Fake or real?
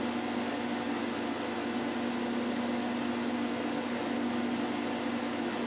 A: real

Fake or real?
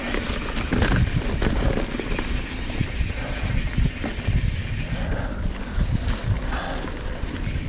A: real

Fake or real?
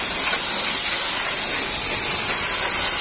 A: real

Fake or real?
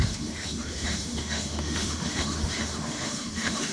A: fake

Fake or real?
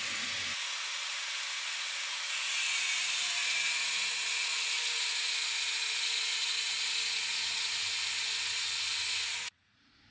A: fake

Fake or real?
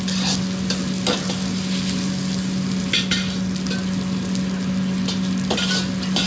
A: real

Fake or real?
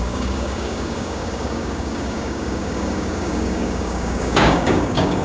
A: fake